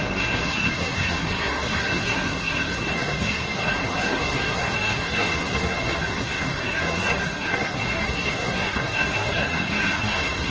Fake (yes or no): yes